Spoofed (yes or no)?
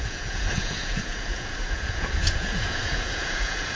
yes